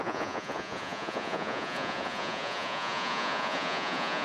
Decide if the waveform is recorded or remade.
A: remade